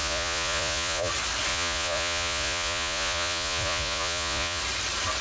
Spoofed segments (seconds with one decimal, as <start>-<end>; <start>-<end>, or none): 0.0-1.1; 1.5-4.6